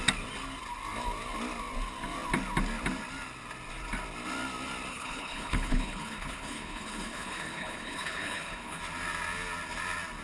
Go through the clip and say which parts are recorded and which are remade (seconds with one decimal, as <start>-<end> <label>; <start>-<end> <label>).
0.0-4.9 recorded; 4.9-8.8 remade; 8.8-10.2 recorded